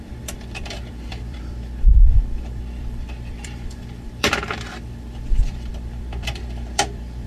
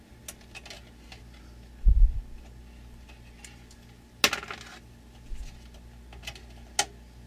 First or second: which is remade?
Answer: first